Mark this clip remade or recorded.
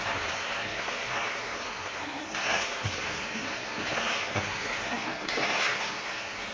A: remade